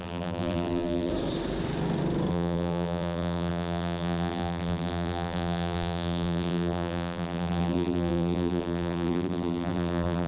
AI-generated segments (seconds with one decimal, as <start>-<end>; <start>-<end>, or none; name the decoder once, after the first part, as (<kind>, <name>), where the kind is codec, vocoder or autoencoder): 0.0-1.1 (vocoder, BigVGAN v2); 2.3-10.3